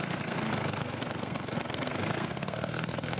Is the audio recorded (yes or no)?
no